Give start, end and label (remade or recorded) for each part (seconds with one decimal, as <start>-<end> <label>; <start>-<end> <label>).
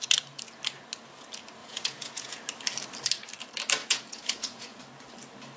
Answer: 0.0-1.6 recorded; 1.6-2.4 remade; 2.4-3.8 recorded; 3.8-4.8 remade; 4.8-5.6 recorded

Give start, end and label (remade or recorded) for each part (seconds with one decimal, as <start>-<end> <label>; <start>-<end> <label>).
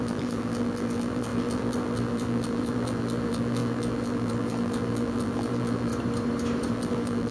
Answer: 0.0-5.9 remade; 5.9-6.7 recorded; 6.7-7.3 remade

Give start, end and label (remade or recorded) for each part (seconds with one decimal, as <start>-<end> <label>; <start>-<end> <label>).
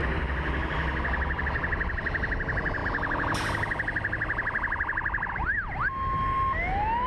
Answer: 0.0-7.1 recorded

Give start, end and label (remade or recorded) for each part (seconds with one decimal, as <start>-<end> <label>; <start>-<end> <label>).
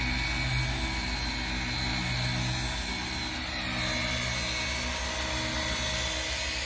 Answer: 0.0-6.7 recorded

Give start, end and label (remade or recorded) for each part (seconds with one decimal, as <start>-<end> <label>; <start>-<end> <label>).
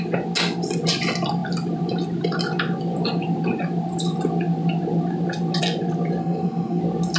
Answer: 0.0-6.2 recorded; 6.2-6.8 remade; 6.8-7.2 recorded